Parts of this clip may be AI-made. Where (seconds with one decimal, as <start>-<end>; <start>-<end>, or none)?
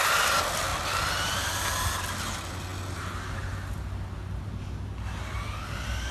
0.7-1.7